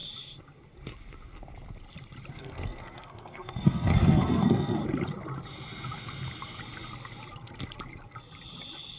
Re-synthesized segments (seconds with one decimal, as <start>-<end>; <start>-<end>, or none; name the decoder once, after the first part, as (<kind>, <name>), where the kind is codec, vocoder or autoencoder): 2.3-4.8 (codec, SNAC)